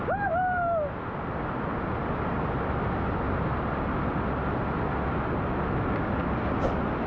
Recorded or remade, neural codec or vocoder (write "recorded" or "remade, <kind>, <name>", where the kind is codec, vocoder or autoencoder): recorded